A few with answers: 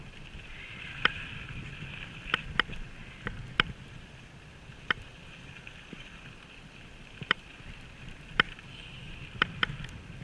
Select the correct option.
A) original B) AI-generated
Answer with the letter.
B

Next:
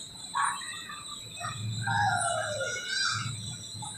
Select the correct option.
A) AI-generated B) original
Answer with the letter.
B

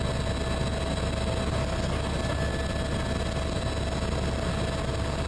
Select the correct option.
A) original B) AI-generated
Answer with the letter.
A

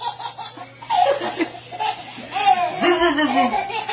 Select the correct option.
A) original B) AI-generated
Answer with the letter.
A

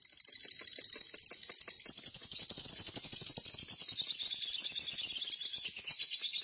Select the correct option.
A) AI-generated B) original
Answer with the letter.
B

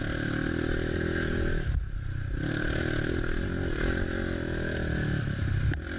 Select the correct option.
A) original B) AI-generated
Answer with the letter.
A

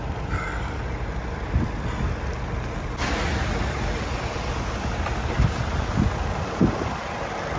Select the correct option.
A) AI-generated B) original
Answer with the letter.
B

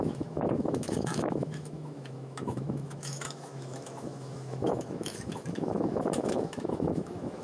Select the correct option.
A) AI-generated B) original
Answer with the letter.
A